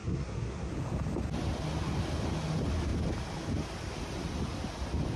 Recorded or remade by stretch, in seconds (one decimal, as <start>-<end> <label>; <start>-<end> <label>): 0.0-0.7 remade; 0.7-5.2 recorded